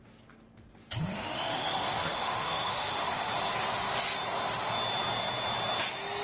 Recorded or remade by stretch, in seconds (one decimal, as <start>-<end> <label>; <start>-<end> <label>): 0.0-1.0 recorded; 1.0-3.3 remade; 3.3-6.2 recorded